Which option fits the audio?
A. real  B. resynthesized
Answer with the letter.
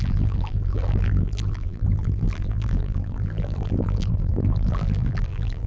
B